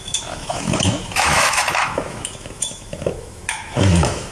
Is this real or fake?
fake